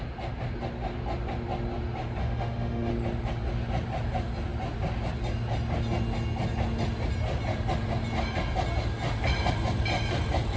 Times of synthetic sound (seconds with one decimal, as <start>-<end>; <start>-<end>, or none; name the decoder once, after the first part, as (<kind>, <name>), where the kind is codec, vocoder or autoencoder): 2.2-2.9 (autoencoder, DAC-VAE)